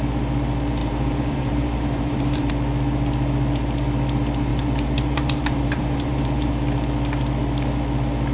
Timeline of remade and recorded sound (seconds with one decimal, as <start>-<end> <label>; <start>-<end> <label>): 0.0-0.8 recorded; 0.8-2.5 remade; 2.5-4.5 recorded; 4.5-6.5 remade; 6.5-8.3 recorded